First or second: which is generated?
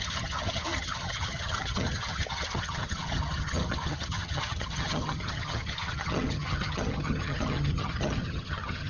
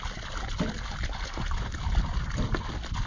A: first